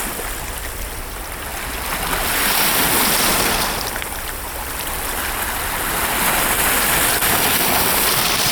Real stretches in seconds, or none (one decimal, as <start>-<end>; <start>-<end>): 0.0-8.5